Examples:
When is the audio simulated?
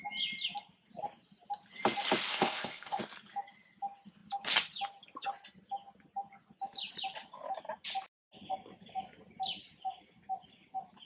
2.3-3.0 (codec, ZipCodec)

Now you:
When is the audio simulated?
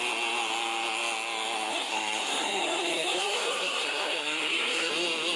1.7-4.9 (codec, SNAC)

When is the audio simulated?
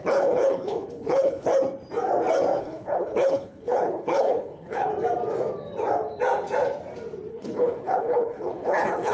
0.0-1.5 (codec, HILCodec); 2.6-4.9; 7.3-9.1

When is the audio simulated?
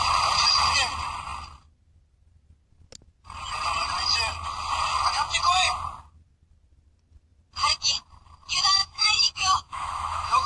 8.8-10.5 (autoencoder, DAC-VAE)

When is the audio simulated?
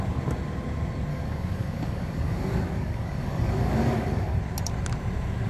1.1-4.4 (codec, DAC)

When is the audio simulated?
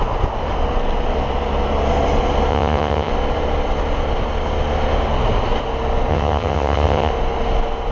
2.5-3.1 (vocoder, HiFi-GAN); 6.1-7.1